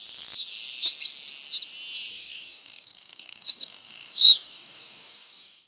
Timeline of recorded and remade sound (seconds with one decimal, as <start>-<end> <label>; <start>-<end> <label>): 0.0-2.1 recorded; 2.1-5.7 remade